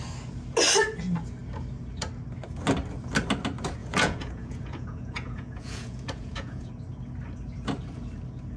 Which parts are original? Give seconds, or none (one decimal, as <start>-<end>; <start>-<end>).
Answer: 0.0-3.8; 6.7-8.6